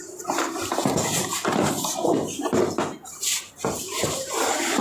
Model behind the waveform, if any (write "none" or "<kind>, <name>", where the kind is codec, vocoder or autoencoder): none